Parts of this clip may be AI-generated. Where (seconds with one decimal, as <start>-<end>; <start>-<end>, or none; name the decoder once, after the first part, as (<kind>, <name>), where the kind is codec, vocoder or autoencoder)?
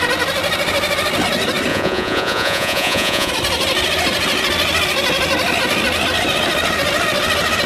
1.7-3.3 (vocoder, Vocos)